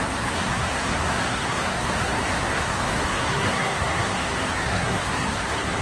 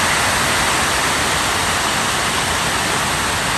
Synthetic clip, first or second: first